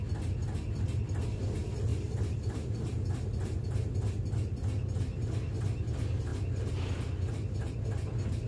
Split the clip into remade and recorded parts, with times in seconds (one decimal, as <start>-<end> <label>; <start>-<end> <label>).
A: 0.0-1.9 recorded; 1.9-3.1 remade; 3.1-8.5 recorded